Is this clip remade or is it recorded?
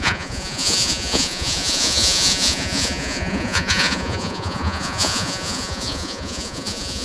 remade